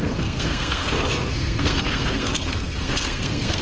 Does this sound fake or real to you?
fake